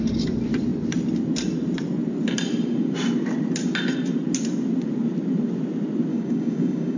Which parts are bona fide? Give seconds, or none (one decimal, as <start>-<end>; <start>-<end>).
0.0-6.1